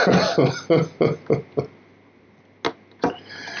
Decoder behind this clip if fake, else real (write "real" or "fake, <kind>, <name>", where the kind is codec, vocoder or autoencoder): real